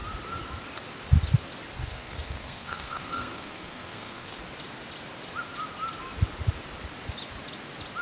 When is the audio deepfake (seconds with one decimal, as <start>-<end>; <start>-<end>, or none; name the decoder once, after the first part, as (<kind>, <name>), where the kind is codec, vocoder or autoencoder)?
1.8-4.4 (codec, SNAC)